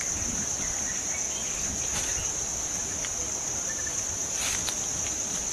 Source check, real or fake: fake